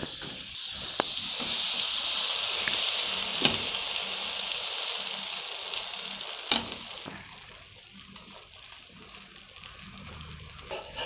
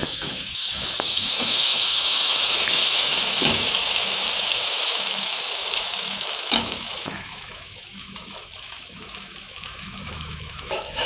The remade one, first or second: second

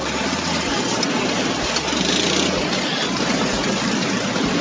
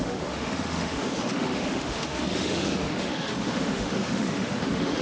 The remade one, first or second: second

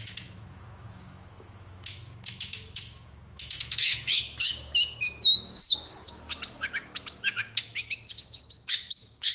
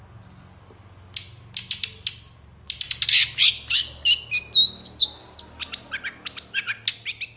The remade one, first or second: first